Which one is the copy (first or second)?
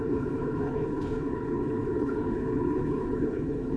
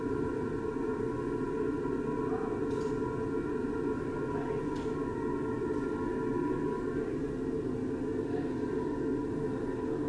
first